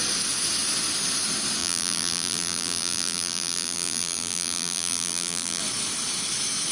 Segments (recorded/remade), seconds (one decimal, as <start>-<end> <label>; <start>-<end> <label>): 0.0-1.6 recorded; 1.6-5.6 remade; 5.6-6.7 recorded